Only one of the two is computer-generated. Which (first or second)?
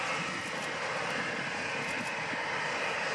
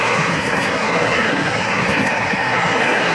second